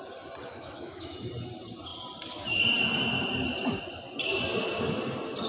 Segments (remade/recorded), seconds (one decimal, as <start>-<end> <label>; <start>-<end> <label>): 0.0-0.5 recorded; 0.5-1.3 remade; 1.3-5.5 recorded